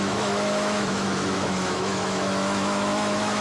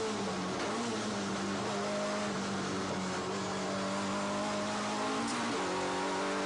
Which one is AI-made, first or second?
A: first